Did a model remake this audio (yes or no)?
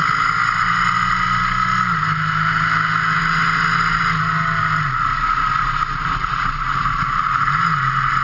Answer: no